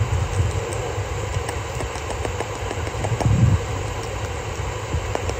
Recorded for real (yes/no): yes